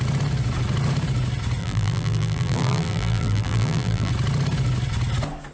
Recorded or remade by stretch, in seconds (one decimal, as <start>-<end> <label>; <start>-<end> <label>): 0.0-1.6 recorded; 1.6-4.1 remade; 4.1-5.5 recorded